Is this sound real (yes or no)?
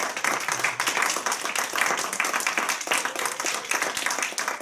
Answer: yes